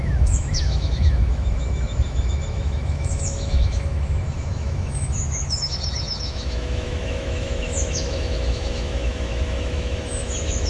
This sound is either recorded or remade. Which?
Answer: remade